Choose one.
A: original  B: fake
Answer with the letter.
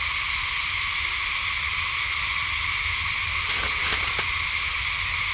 A